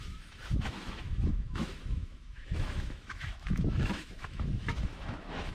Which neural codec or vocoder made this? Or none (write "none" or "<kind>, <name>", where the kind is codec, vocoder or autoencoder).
autoencoder, DAC-VAE